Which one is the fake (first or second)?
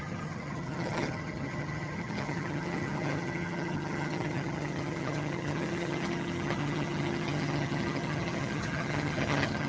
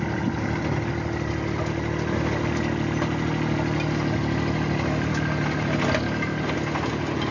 first